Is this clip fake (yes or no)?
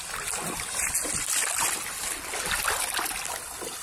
no